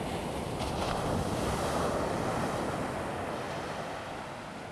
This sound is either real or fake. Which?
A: real